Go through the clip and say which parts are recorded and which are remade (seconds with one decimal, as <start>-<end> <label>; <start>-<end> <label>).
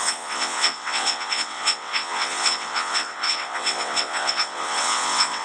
0.0-5.4 remade